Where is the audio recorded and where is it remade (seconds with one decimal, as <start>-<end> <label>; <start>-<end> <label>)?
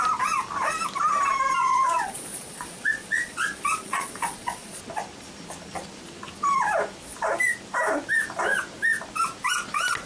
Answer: 0.0-1.6 recorded; 1.6-4.8 remade; 4.8-10.1 recorded